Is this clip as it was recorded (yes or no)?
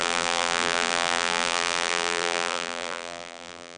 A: no